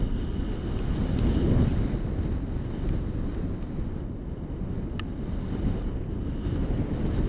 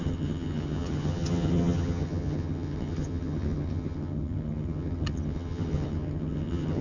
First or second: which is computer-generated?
second